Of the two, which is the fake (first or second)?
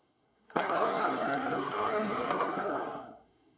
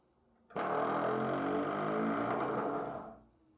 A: first